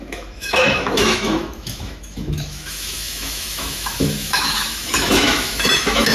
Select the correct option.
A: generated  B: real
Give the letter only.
A